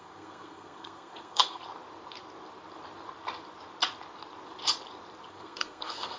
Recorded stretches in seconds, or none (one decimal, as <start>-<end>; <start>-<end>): 1.6-5.3